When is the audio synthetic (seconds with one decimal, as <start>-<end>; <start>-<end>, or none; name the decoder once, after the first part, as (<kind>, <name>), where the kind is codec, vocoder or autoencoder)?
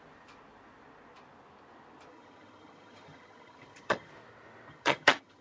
2.1-4.1 (vocoder, HiFi-GAN); 4.7-5.4